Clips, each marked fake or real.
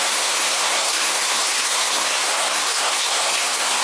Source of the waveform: fake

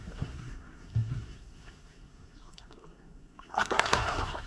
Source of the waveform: fake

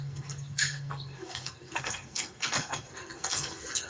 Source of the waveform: fake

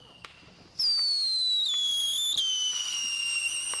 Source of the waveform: real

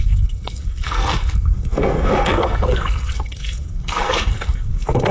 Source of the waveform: fake